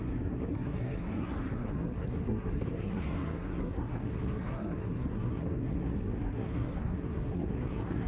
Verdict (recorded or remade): remade